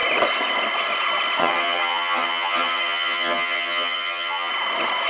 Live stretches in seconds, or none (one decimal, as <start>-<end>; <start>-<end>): 0.0-1.4; 4.5-5.1